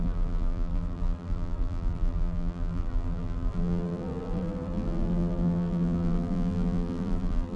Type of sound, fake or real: fake